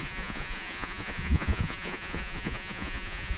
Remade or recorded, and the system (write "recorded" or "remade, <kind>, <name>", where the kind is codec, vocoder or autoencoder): remade, vocoder, Vocos